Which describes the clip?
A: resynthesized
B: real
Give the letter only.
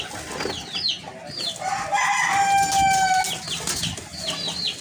B